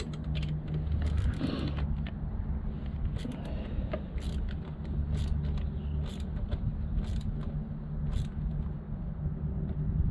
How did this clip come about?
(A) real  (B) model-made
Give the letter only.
A